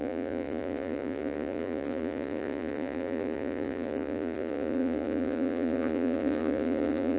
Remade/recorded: remade